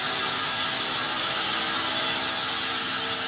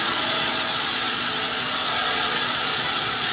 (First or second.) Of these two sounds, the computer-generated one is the second